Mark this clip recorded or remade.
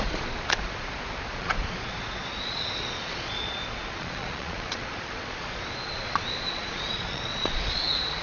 remade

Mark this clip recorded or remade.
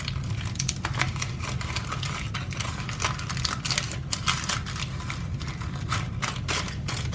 recorded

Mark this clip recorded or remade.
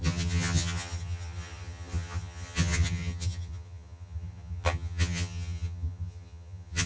remade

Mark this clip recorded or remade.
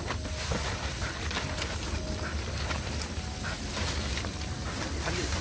recorded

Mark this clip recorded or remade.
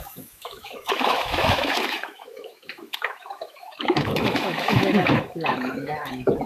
remade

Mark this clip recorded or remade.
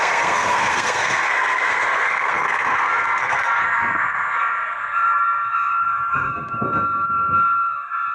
remade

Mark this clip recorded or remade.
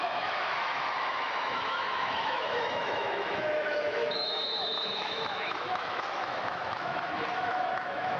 remade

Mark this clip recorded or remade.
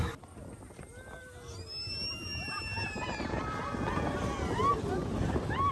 recorded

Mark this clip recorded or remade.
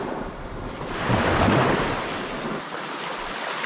recorded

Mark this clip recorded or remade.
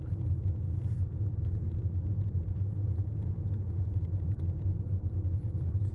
recorded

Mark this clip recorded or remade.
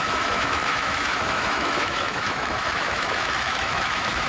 remade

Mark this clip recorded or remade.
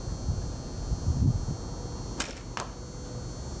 recorded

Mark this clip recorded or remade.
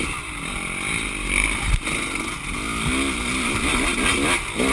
recorded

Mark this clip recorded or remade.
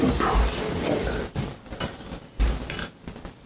recorded